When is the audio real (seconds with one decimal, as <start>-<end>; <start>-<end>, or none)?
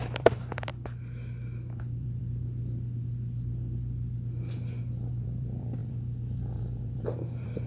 0.7-1.8; 2.2-5.1